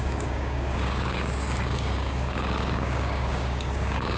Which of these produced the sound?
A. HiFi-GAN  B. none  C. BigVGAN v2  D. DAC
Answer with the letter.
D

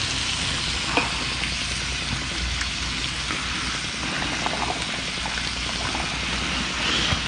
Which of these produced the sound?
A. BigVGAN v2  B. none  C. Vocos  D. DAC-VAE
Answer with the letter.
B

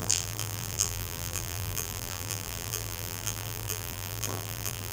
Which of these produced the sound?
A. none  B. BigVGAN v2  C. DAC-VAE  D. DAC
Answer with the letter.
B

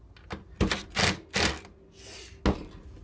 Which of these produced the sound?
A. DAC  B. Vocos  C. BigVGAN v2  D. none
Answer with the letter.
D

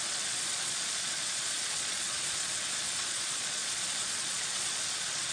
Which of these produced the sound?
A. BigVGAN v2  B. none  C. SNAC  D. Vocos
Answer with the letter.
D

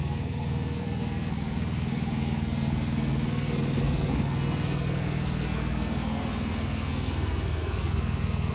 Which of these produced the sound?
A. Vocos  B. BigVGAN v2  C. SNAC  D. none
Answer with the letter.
C